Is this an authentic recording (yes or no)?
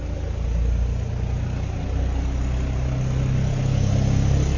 yes